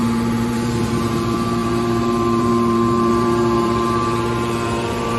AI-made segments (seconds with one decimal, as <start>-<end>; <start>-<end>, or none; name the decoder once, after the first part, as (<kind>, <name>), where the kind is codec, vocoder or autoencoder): 0.0-5.2 (vocoder, BigVGAN v2)